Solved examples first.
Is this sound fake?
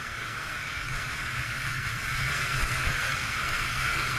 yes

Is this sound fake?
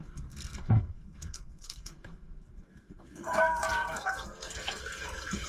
yes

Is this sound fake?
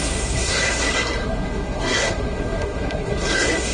yes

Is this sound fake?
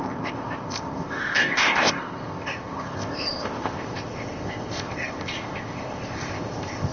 yes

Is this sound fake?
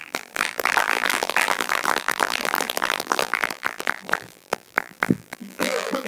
yes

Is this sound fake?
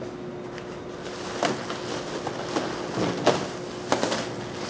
no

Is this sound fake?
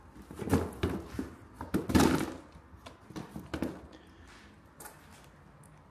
no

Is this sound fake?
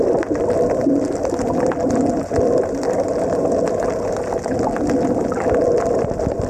no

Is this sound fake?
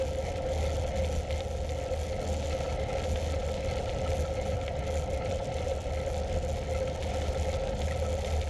no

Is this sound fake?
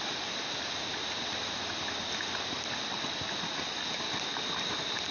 no